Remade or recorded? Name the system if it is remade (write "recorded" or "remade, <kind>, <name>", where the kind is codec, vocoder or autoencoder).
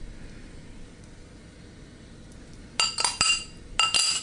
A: recorded